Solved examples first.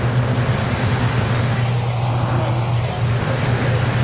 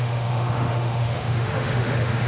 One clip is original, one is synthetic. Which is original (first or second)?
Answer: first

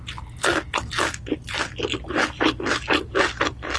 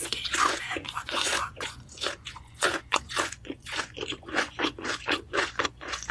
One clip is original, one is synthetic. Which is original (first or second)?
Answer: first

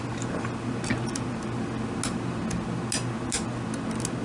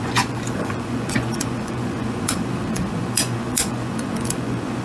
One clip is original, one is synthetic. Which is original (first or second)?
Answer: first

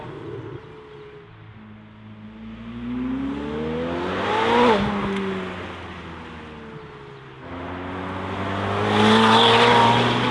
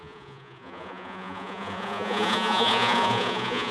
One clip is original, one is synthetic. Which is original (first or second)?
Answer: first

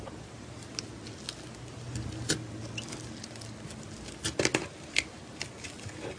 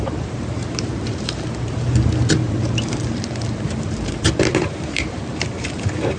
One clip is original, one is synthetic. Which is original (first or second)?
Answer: first